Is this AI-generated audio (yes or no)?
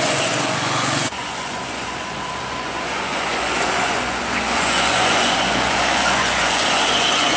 yes